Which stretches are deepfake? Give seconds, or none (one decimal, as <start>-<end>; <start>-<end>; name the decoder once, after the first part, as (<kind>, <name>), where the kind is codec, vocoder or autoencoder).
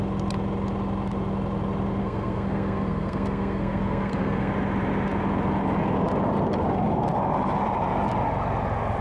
2.0-4.5 (codec, SNAC)